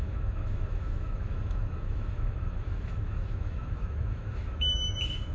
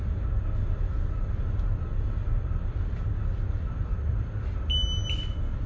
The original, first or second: second